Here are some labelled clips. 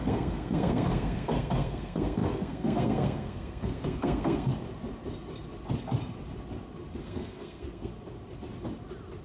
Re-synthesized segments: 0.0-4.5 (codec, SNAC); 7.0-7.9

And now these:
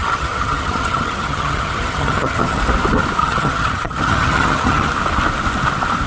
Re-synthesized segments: 0.0-2.6 (vocoder, HiFi-GAN); 3.2-4.9